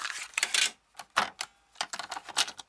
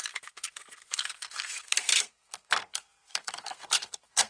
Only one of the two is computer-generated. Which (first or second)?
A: second